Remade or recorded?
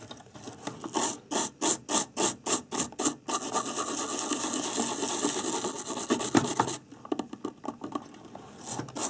recorded